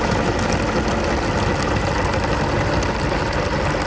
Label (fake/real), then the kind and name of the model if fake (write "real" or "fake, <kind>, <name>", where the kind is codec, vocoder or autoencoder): real